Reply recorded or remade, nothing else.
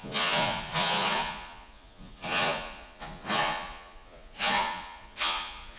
remade